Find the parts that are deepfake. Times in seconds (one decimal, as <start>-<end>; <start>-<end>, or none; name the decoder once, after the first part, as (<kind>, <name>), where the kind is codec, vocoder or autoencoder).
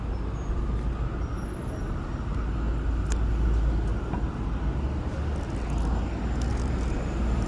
3.9-4.6 (vocoder, BigVGAN v2); 6.5-7.5